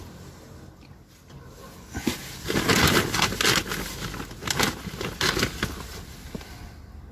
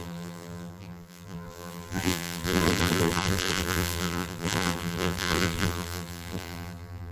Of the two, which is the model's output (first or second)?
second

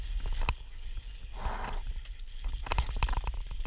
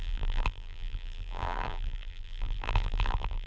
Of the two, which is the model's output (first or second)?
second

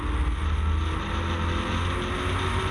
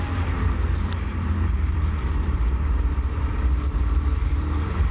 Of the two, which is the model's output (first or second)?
second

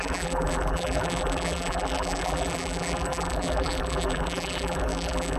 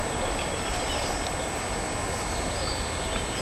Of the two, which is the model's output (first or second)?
first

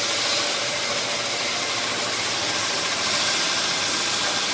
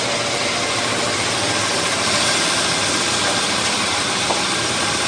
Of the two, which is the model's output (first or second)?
first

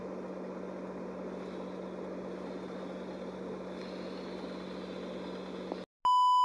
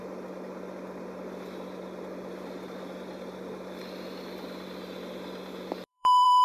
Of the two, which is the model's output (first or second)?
second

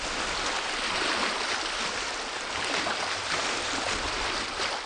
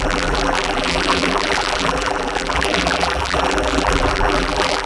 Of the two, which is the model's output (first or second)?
second